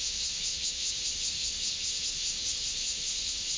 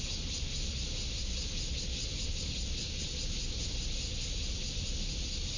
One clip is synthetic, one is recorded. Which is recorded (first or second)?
second